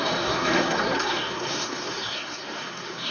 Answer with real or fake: fake